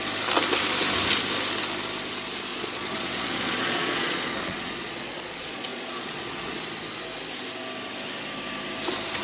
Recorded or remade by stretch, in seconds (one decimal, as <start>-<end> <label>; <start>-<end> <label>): 0.0-2.5 recorded; 2.5-6.6 remade; 6.6-9.2 recorded